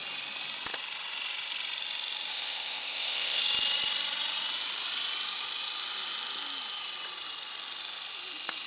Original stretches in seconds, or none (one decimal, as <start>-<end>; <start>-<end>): 0.0-2.3; 3.4-8.7